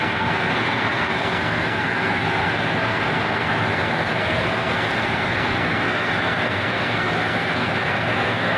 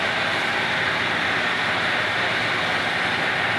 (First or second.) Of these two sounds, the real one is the second